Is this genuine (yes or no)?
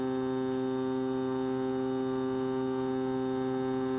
yes